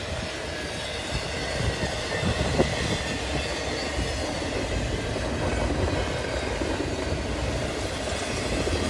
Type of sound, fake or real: real